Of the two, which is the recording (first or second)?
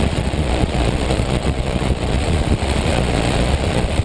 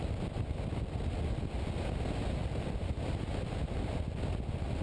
second